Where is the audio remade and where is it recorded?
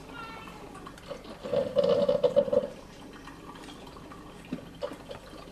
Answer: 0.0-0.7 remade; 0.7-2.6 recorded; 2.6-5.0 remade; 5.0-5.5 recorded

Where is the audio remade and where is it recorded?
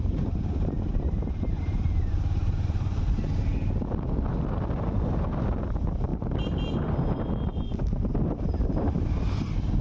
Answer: 0.0-0.9 recorded; 0.9-3.0 remade; 3.0-6.1 recorded; 6.1-7.3 remade; 7.3-9.8 recorded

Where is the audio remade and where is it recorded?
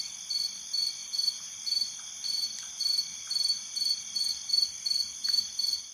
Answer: 0.0-1.0 recorded; 1.0-4.5 remade; 4.5-5.2 recorded; 5.2-5.9 remade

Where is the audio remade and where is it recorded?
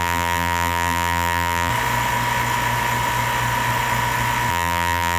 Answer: 0.0-1.7 remade; 1.7-4.5 recorded; 4.5-5.2 remade